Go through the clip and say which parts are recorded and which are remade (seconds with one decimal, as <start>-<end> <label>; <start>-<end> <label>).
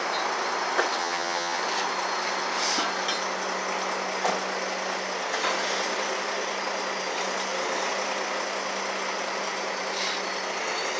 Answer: 0.0-1.0 recorded; 1.0-1.6 remade; 1.6-11.0 recorded